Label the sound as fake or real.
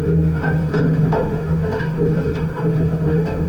fake